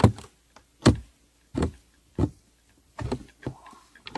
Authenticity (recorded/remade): recorded